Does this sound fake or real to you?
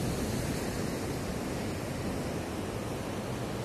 real